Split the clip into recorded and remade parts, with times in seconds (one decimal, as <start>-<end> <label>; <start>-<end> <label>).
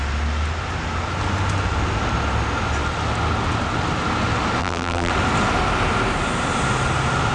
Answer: 0.0-4.6 recorded; 4.6-5.1 remade; 5.1-7.3 recorded